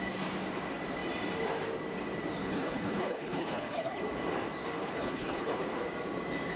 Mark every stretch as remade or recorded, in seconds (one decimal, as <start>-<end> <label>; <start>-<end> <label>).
0.0-2.4 recorded; 2.4-4.0 remade; 4.0-4.8 recorded; 4.8-5.6 remade; 5.6-6.6 recorded